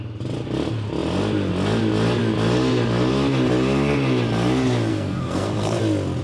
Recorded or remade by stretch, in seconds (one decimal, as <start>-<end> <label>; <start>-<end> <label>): 0.0-4.9 recorded; 4.9-5.8 remade; 5.8-6.2 recorded